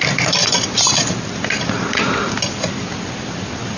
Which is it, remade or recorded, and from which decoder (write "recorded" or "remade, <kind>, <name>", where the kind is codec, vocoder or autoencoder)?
remade, vocoder, BigVGAN v2